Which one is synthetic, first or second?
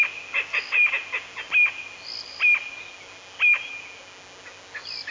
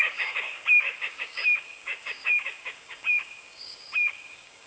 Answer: second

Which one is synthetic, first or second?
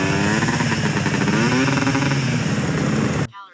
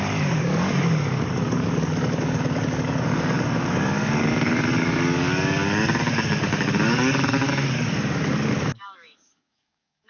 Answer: second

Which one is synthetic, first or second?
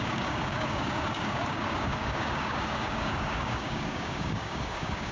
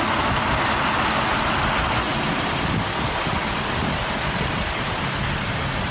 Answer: first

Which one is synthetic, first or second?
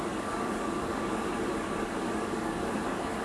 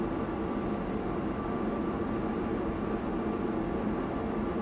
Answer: first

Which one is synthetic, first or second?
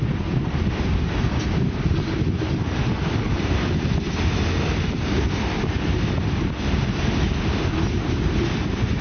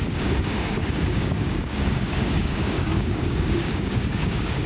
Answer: second